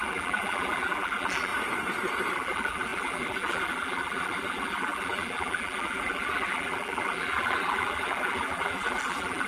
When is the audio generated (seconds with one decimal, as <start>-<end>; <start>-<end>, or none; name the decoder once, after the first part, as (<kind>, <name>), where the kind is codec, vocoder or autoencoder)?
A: 0.0-1.5 (vocoder, BigVGAN v2); 2.3-9.5